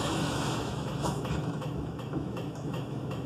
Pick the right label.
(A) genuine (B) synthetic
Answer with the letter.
B